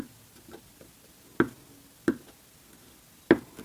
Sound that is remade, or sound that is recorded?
recorded